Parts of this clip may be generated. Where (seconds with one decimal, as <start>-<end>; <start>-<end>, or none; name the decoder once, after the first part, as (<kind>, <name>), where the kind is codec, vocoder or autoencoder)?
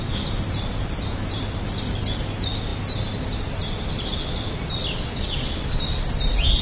none